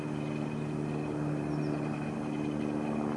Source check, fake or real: real